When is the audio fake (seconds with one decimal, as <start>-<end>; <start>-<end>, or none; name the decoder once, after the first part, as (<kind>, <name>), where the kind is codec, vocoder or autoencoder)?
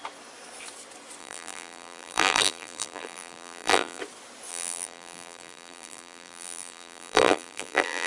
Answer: 1.2-4.0 (vocoder, BigVGAN v2); 4.5-8.1